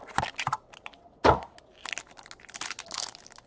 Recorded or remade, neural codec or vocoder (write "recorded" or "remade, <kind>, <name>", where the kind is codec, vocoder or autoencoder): recorded